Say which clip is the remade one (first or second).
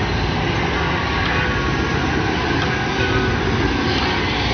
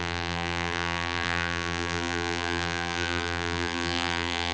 second